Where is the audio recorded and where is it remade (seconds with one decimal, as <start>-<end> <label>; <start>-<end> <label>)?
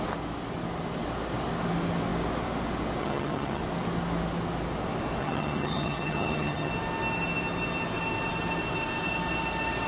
0.0-3.0 recorded; 3.0-3.6 remade; 3.6-5.2 recorded; 5.2-6.7 remade; 6.7-9.9 recorded